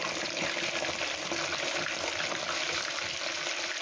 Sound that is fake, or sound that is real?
real